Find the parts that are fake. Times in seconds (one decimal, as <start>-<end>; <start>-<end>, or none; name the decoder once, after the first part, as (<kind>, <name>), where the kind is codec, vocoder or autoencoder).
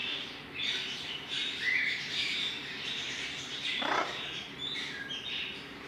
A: 0.0-5.9 (vocoder, BigVGAN v2)